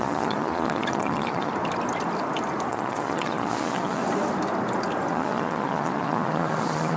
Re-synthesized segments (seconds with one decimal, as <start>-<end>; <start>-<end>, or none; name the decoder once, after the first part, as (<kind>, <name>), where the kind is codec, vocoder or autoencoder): 0.0-1.5 (vocoder, Vocos); 2.7-4.0; 5.1-7.0